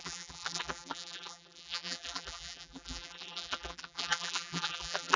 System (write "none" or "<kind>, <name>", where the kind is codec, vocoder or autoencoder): vocoder, BigVGAN v2